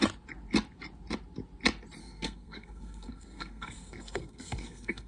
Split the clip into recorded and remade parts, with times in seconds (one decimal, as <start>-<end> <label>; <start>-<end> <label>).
0.0-2.0 recorded; 2.0-5.1 remade